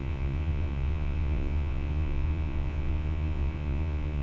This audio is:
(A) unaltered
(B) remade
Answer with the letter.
B